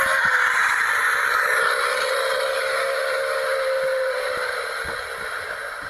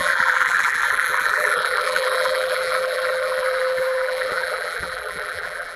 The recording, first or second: first